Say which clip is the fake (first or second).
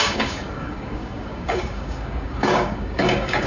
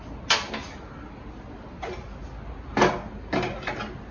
first